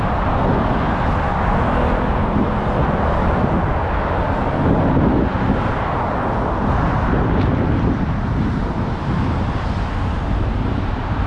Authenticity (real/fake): real